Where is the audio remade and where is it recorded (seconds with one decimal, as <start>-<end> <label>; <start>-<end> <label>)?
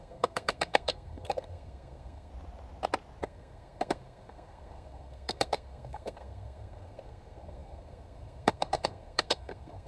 0.0-2.3 remade; 2.3-3.2 recorded; 3.2-9.9 remade